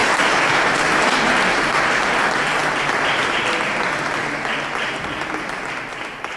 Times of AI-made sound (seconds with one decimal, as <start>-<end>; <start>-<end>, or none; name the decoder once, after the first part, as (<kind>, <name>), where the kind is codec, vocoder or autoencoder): 0.0-1.5 (vocoder, BigVGAN v2); 2.6-5.1